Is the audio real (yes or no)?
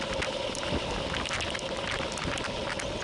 yes